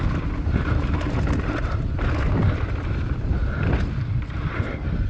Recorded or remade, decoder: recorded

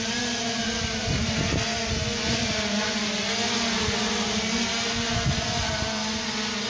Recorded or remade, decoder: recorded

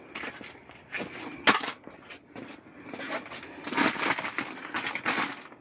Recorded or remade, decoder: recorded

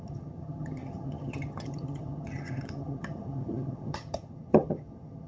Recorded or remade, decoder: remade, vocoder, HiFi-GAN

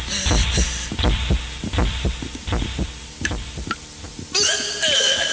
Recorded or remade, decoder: recorded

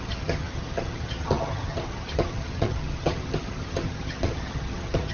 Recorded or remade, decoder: remade, vocoder, HiFi-GAN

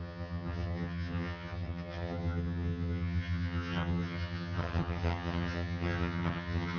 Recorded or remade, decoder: remade, vocoder, HiFi-GAN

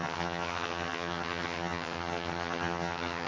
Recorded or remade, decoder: remade, vocoder, HiFi-GAN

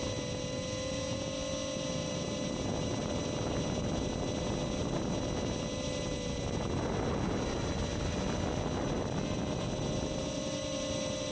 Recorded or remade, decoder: recorded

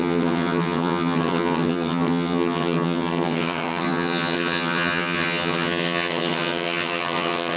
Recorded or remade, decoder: remade, vocoder, HiFi-GAN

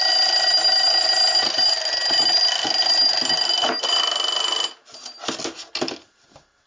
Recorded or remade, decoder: recorded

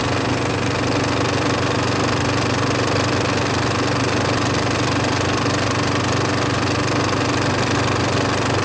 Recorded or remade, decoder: recorded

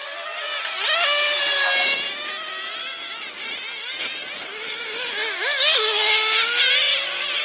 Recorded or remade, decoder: recorded